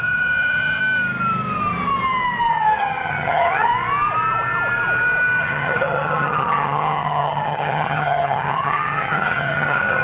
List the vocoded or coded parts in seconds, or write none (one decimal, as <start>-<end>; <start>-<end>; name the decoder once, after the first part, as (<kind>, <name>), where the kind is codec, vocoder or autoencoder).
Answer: 0.0-0.8 (vocoder, HiFi-GAN); 2.5-3.7; 5.4-10.0